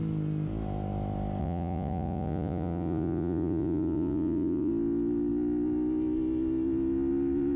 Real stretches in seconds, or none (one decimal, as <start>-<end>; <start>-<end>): 0.0-1.4; 4.7-7.6